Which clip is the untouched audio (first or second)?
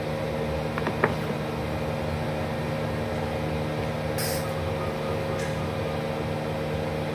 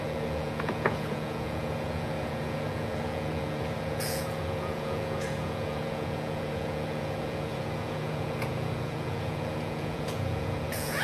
first